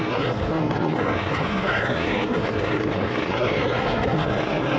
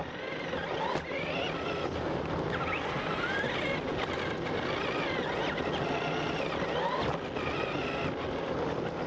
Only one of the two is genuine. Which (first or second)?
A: second